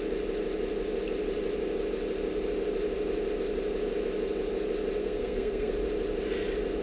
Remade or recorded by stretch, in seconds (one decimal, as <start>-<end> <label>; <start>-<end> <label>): 0.0-5.0 recorded; 5.0-5.7 remade; 5.7-6.8 recorded